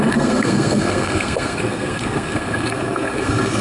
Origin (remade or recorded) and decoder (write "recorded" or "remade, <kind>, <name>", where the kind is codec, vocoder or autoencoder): remade, codec, SNAC